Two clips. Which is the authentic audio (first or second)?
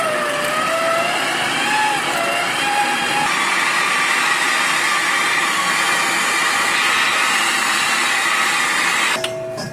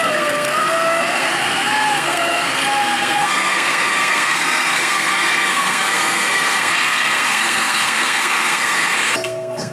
first